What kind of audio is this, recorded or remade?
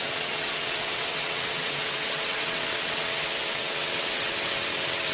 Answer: remade